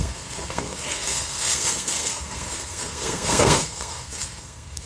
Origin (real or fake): fake